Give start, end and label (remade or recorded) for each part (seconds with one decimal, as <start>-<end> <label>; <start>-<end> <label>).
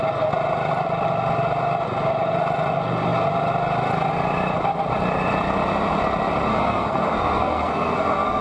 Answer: 0.0-6.5 recorded; 6.5-8.4 remade